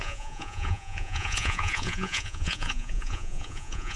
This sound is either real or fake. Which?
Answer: fake